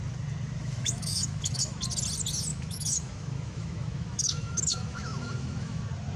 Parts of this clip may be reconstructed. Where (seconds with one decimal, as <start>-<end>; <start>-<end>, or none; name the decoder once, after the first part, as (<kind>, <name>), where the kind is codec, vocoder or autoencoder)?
0.6-1.8 (autoencoder, DAC-VAE); 2.5-5.8